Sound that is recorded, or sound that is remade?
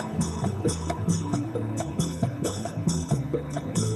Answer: remade